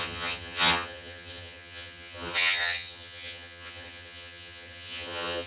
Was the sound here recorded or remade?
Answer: remade